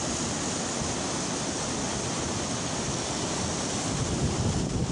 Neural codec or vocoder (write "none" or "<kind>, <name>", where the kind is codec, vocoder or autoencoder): none